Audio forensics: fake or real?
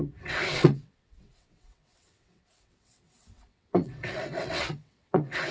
fake